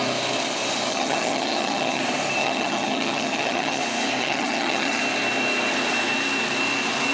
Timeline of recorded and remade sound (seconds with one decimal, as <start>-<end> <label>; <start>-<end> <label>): 0.0-0.9 recorded; 0.9-2.0 remade; 2.0-2.4 recorded; 2.4-3.8 remade; 3.8-4.2 recorded; 4.2-5.0 remade; 5.0-7.1 recorded